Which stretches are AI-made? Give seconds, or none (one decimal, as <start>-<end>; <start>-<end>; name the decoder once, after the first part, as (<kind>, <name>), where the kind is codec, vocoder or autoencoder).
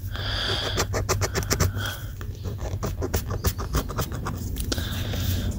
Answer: 2.0-4.9 (vocoder, BigVGAN v2)